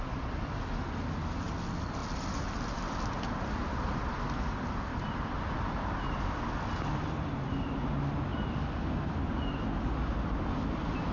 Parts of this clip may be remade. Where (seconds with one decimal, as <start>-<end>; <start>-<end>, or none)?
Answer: none